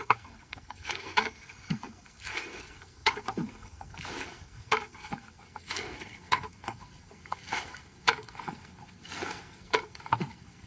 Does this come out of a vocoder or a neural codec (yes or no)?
yes